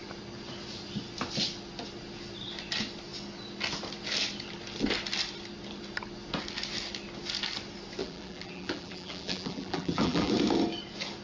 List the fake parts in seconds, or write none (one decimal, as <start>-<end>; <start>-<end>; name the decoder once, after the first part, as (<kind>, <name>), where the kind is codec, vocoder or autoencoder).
8.0-10.3 (vocoder, BigVGAN v2)